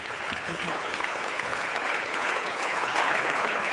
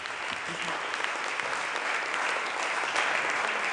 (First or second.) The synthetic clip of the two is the first